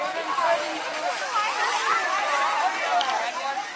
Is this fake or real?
real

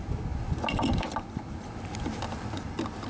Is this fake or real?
real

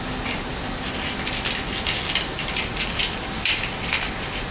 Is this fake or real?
real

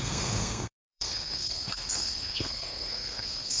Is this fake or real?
fake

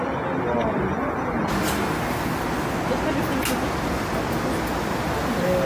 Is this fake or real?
real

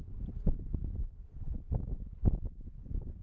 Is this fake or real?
real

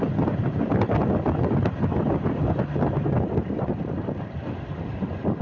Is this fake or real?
real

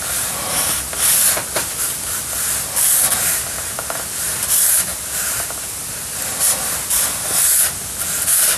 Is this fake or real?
real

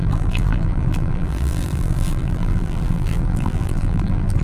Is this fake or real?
fake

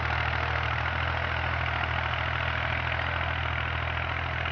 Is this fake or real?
real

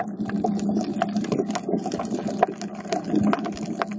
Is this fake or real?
real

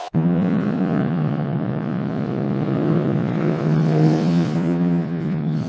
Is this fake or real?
fake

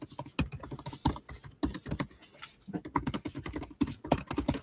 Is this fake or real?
real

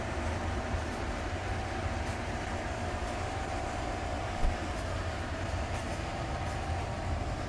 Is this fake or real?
fake